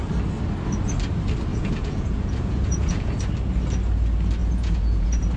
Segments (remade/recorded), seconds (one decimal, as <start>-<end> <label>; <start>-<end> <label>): 0.0-1.5 recorded; 1.5-3.1 remade; 3.1-4.4 recorded; 4.4-5.4 remade